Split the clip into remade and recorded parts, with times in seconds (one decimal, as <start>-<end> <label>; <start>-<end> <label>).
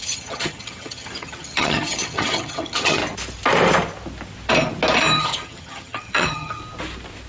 0.0-3.0 remade; 3.0-5.2 recorded; 5.2-6.6 remade; 6.6-7.3 recorded